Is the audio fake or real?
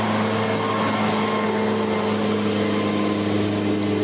real